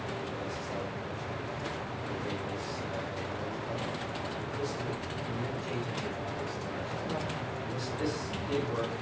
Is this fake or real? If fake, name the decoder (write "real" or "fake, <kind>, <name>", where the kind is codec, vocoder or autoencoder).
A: real